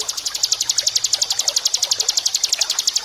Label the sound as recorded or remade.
recorded